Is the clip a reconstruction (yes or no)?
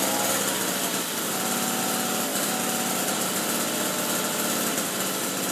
no